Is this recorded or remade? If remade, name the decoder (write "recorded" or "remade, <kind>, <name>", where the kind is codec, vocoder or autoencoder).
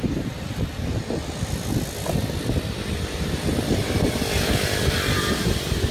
recorded